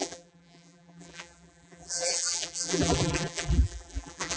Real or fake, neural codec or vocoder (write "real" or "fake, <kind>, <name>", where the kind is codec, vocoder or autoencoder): fake, vocoder, BigVGAN v2